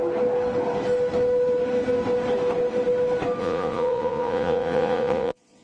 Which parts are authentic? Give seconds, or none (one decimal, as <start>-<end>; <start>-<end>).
0.0-3.4